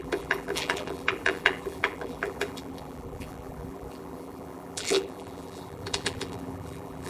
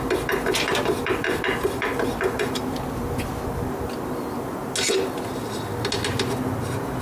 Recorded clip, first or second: second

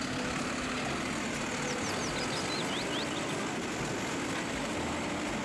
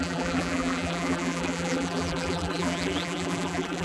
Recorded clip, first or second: first